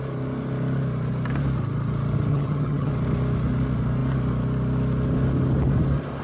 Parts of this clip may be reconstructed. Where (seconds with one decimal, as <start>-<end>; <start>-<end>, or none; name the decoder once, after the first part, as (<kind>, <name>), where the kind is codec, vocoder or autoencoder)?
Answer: 2.3-2.9 (vocoder, HiFi-GAN)